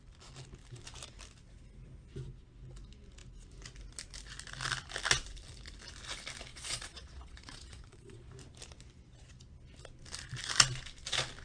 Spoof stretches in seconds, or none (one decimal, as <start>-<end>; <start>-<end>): 6.5-8.3